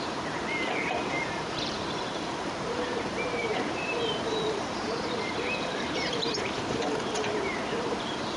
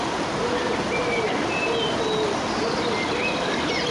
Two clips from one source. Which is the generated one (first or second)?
first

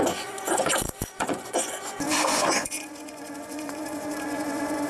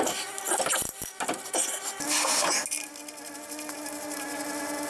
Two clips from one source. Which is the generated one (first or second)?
first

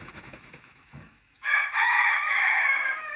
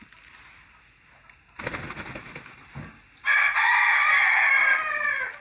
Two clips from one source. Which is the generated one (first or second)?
first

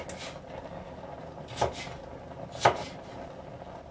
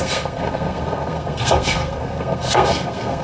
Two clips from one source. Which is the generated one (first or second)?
second